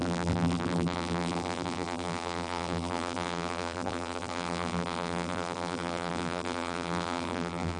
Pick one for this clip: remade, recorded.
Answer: remade